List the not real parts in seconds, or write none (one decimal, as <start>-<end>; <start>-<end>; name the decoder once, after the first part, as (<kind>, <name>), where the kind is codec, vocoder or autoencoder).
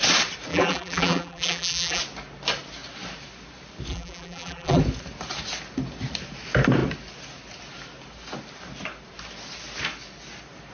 0.5-2.0 (vocoder, BigVGAN v2); 3.9-4.8